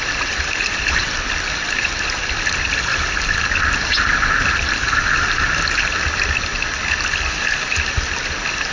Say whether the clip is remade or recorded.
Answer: recorded